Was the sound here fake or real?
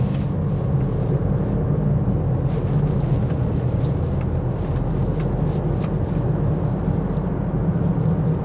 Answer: real